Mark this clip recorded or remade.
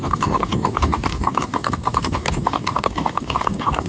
remade